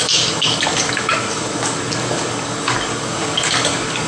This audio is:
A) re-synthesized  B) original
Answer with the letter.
A